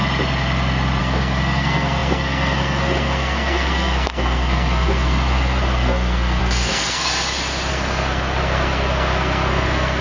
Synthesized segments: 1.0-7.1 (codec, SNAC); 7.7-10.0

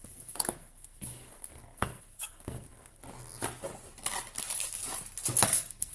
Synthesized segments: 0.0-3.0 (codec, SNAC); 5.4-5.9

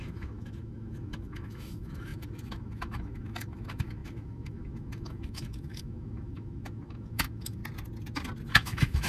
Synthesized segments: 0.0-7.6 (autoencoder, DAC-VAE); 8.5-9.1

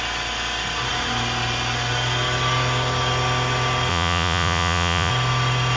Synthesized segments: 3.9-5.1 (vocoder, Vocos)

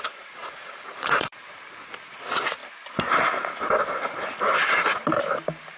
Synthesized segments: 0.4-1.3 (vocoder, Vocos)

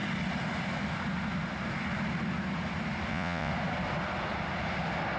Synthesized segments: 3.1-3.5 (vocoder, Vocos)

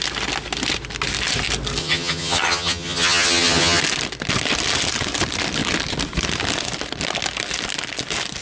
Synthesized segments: 1.8-3.8 (vocoder, HiFi-GAN)

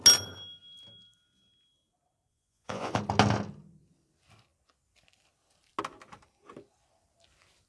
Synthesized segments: 2.3-3.0 (vocoder, Vocos)